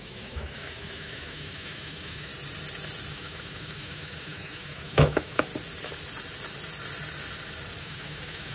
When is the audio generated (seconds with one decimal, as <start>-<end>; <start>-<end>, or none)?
0.0-2.3; 3.1-5.5; 7.8-8.5